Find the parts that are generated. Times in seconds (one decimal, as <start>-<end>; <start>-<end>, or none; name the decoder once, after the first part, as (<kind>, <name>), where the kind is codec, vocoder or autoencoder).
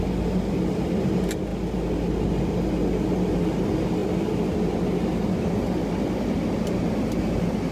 none